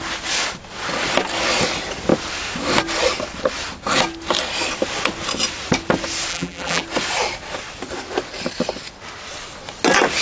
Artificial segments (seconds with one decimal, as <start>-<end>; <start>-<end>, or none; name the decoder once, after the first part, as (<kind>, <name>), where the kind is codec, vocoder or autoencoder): 6.3-6.8 (vocoder, BigVGAN v2)